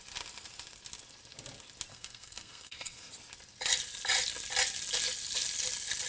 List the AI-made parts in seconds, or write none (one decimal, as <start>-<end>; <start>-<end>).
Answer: 1.9-3.1